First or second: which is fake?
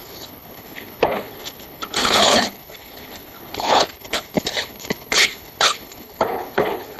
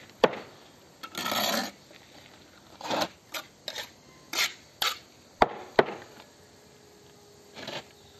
first